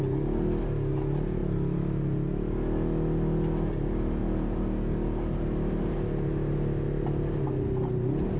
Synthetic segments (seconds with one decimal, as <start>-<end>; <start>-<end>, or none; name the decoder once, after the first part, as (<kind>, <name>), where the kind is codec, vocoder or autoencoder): none